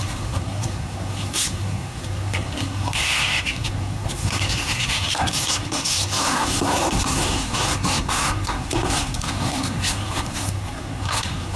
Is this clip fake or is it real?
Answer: fake